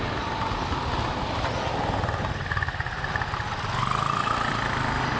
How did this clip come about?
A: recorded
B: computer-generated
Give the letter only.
A